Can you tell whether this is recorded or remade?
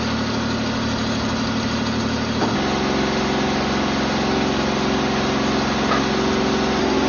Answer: recorded